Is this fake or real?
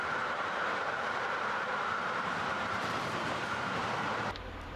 fake